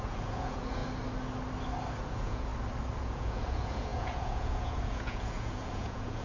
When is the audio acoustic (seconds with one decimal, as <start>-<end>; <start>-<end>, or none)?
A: 0.8-2.0; 2.5-3.0